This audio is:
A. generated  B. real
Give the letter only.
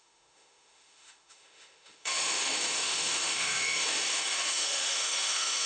A